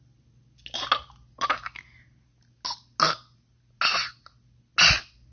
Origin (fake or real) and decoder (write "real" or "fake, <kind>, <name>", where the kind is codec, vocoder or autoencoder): real